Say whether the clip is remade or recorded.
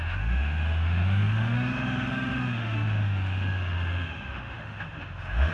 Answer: remade